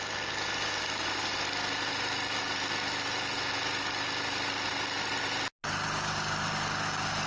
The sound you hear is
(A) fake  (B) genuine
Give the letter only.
B